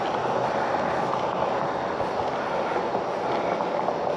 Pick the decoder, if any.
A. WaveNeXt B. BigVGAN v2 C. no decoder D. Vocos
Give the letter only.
C